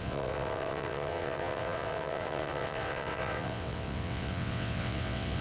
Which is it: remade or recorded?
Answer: remade